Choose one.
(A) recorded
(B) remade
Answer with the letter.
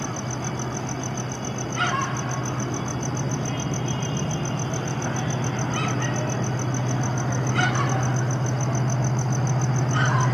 A